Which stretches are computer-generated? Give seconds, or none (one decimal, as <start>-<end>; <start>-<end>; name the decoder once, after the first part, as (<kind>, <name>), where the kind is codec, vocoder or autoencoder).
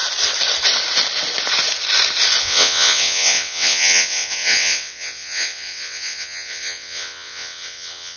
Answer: 2.4-8.2 (vocoder, WaveNeXt)